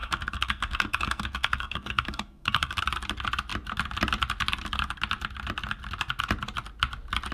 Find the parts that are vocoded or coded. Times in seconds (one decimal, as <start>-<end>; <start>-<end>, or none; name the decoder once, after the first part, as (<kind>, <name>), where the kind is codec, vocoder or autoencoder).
0.0-2.8 (codec, SNAC)